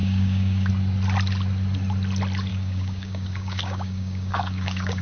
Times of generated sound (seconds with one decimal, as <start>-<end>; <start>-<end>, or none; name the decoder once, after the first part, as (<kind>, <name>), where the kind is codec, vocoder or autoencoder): 0.0-0.7 (codec, DAC); 2.5-5.0